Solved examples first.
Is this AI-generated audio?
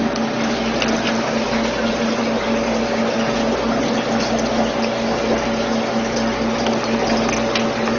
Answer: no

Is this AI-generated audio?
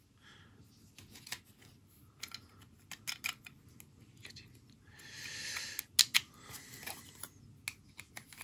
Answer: no